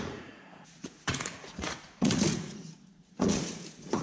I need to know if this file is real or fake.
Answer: fake